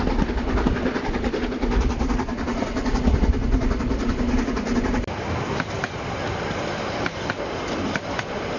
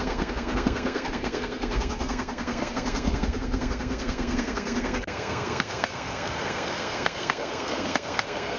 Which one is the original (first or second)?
first